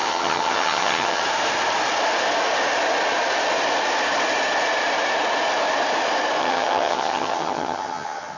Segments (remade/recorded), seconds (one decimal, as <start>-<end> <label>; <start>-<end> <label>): 0.0-1.2 remade; 1.2-6.4 recorded; 6.4-8.4 remade